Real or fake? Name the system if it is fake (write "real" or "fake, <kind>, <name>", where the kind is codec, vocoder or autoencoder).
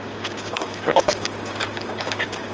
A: fake, codec, DAC